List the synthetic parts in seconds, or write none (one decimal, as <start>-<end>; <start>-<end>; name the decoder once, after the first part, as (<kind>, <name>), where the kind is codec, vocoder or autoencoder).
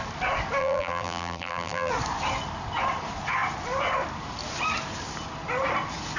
0.6-1.9 (vocoder, BigVGAN v2)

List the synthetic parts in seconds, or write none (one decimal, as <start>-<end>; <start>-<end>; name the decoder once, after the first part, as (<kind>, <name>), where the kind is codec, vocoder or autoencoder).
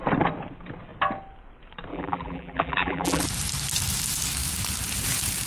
1.9-3.2 (vocoder, BigVGAN v2)